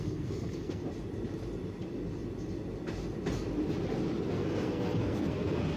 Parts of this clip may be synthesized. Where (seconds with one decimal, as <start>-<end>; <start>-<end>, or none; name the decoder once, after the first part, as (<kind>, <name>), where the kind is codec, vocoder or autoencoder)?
0.0-0.8 (codec, SNAC); 4.3-5.8

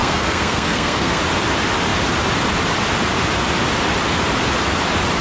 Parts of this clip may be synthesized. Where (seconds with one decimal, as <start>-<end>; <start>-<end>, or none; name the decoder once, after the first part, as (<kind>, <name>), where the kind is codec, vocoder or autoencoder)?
0.0-1.2 (codec, SNAC)

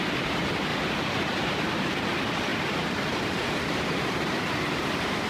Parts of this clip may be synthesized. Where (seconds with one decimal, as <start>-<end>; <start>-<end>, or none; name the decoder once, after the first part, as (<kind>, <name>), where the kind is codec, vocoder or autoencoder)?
0.7-1.9 (vocoder, BigVGAN v2); 2.5-5.3